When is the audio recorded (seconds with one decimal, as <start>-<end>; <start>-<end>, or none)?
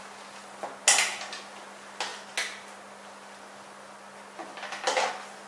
0.0-5.5